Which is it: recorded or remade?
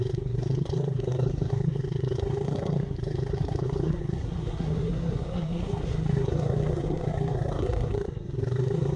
remade